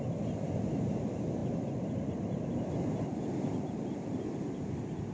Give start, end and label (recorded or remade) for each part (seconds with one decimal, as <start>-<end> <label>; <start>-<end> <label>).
0.0-5.1 recorded